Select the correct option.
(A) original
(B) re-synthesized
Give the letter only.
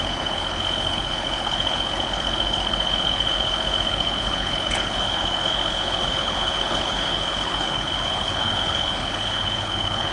B